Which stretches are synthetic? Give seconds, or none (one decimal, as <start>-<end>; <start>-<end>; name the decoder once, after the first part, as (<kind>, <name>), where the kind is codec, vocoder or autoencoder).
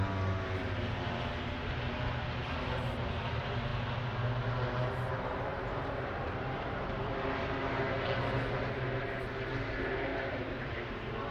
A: 5.5-6.1 (vocoder, BigVGAN v2); 10.1-11.3